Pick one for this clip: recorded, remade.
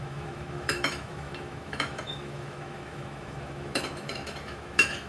remade